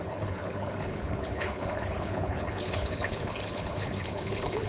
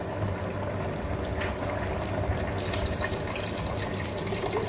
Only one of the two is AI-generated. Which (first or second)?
first